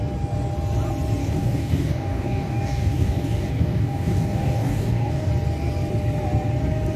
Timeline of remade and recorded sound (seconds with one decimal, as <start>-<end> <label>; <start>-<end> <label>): 0.0-1.2 recorded; 1.2-5.3 remade; 5.3-7.0 recorded